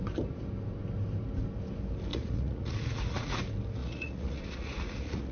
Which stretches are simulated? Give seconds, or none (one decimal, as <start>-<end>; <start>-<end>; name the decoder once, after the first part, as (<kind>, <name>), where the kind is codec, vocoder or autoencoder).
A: 2.1-3.4 (vocoder, Vocos); 3.8-5.3